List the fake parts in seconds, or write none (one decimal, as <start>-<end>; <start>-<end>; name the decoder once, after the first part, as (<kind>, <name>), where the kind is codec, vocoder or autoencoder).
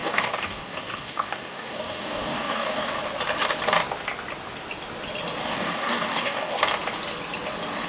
0.0-2.9 (codec, DAC); 5.4-6.6